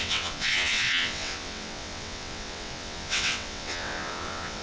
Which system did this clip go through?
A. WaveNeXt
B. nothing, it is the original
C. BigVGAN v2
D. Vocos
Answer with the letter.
A